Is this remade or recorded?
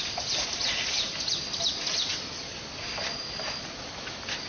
recorded